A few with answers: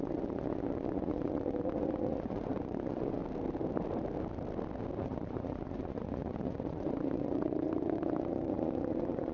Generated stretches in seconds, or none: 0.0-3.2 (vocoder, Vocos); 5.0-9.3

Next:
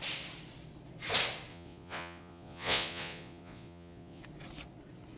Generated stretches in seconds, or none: 1.5-4.2 (vocoder, Vocos)

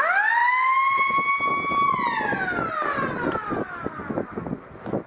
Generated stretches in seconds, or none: none

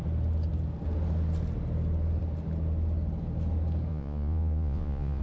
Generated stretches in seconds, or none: 3.9-5.2 (vocoder, Vocos)